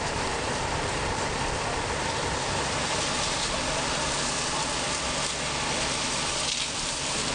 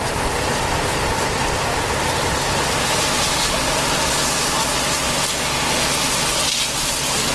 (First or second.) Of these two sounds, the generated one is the first